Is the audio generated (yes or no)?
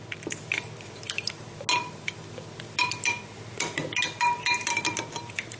no